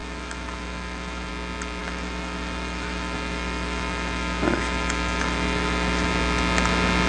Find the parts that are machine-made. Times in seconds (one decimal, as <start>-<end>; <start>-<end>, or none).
0.0-1.3; 1.8-6.1

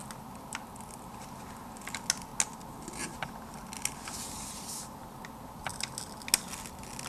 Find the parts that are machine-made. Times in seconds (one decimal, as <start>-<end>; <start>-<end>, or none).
none